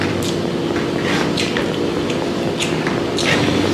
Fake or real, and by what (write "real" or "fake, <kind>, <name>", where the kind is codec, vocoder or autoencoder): real